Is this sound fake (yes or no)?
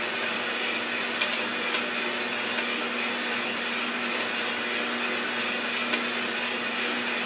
no